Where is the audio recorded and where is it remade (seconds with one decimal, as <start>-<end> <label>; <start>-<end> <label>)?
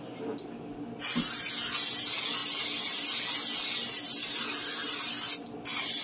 0.0-6.0 recorded